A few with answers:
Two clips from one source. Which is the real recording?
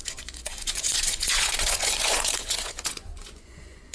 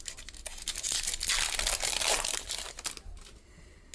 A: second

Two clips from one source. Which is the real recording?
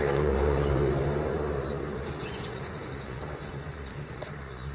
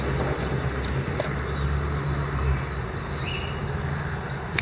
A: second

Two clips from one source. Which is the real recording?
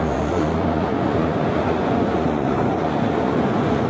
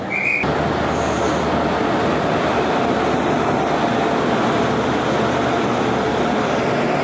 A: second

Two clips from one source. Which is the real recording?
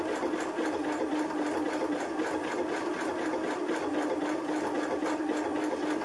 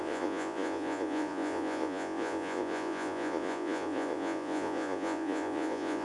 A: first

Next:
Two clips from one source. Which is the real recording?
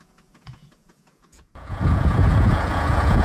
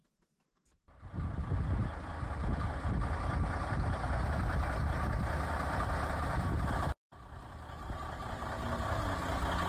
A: second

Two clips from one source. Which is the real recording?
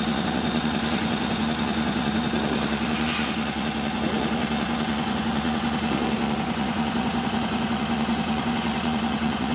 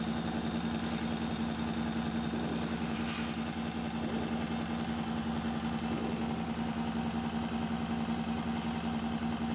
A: second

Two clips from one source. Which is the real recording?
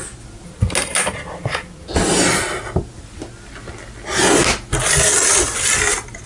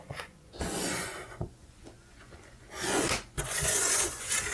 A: first